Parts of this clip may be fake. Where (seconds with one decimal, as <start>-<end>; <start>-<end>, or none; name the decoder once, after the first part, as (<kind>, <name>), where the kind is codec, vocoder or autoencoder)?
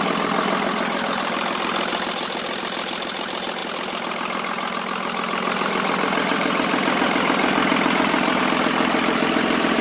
none